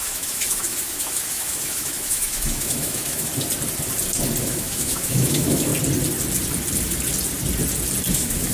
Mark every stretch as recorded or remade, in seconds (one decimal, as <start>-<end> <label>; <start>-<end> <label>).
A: 0.0-3.3 remade; 3.3-4.4 recorded; 4.4-5.7 remade; 5.7-8.1 recorded; 8.1-8.5 remade